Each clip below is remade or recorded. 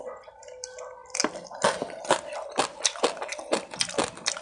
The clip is remade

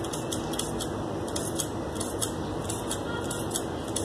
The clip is recorded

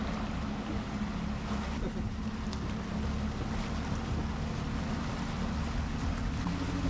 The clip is recorded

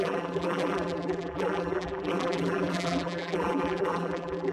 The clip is remade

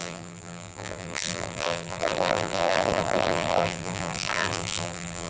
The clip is remade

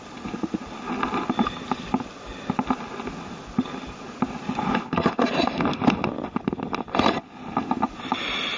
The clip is recorded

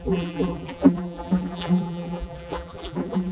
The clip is remade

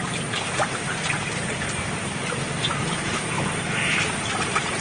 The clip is remade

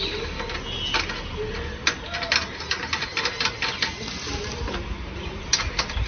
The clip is recorded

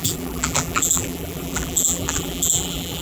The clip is remade